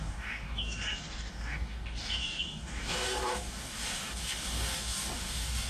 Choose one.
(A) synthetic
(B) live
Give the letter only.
A